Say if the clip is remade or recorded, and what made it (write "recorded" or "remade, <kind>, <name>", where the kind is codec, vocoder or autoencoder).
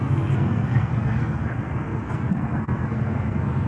remade, codec, SNAC